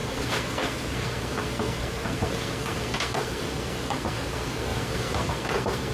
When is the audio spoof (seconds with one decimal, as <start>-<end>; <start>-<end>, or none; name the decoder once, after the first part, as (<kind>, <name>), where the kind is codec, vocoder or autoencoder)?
0.0-5.9 (codec, SNAC)